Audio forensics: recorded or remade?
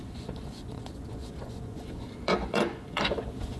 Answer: remade